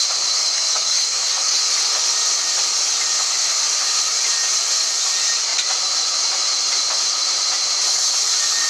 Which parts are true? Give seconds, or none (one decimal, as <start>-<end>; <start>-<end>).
0.0-0.4; 1.6-8.7